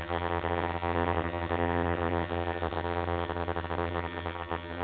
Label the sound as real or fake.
fake